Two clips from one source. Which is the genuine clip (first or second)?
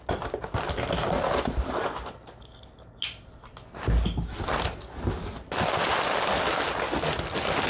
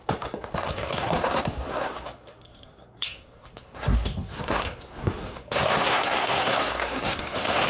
first